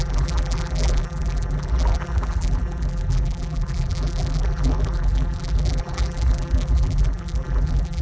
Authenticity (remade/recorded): remade